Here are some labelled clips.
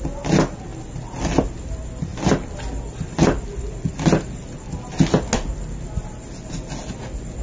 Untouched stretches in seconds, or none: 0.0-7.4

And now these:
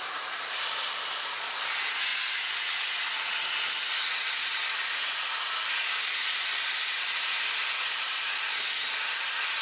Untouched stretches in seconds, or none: 0.0-9.6

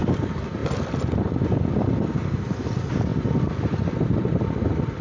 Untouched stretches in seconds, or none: 0.0-5.0

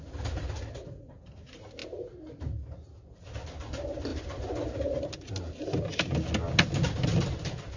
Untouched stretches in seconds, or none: 0.0-7.8

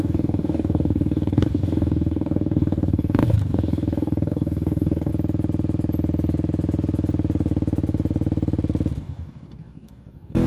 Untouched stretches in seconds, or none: 5.1-9.0

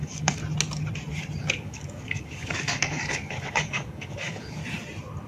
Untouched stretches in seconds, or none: 0.4-1.4; 4.6-5.3

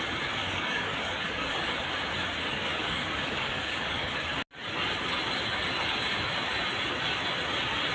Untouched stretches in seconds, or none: 0.0-0.4; 1.7-2.5; 4.1-7.9